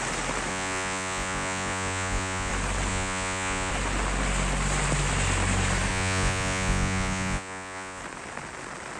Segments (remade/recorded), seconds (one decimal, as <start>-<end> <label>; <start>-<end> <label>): 0.0-0.5 recorded; 0.5-2.5 remade; 2.5-2.9 recorded; 2.9-3.7 remade; 3.7-5.9 recorded; 5.9-8.0 remade; 8.0-9.0 recorded